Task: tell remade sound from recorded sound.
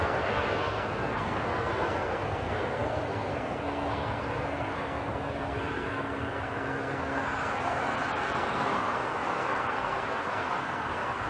remade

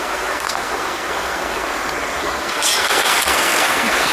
remade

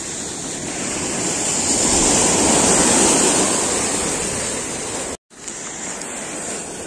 recorded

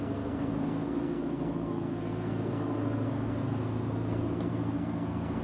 remade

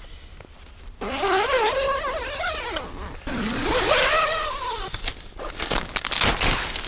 recorded